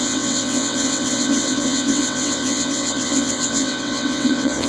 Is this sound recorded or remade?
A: remade